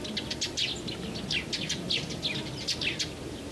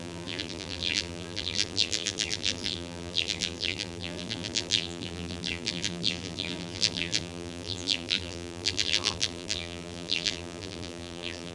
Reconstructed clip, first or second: second